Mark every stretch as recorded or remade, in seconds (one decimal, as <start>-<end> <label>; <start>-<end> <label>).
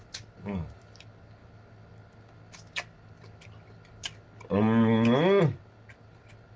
0.0-6.6 recorded